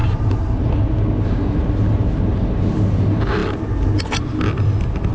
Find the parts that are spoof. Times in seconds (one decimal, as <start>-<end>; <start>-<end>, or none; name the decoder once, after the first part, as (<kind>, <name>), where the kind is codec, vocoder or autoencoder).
0.0-0.7 (vocoder, BigVGAN v2)